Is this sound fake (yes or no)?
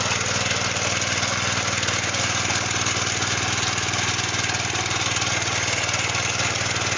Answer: no